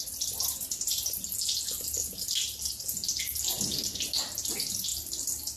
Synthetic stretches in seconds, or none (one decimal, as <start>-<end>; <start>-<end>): none